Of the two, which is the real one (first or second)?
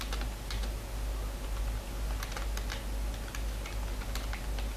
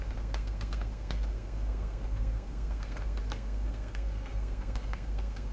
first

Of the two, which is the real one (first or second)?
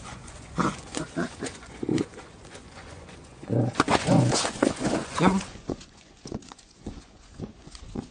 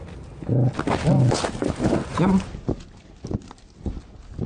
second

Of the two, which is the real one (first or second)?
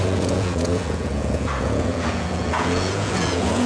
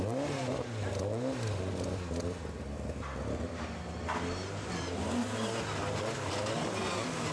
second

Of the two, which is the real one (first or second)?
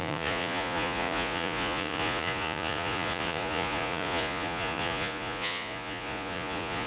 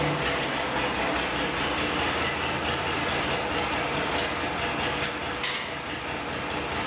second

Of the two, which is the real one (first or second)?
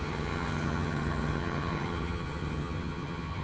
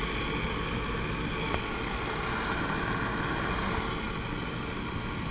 second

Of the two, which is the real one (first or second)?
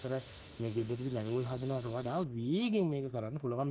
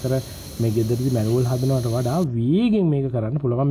second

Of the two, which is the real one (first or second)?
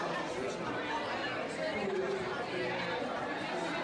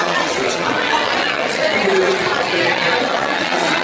first